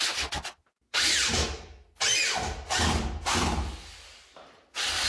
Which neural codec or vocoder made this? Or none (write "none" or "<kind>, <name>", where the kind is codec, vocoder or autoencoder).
none